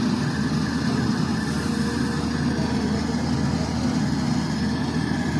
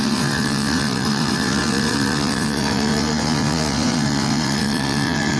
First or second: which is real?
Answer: first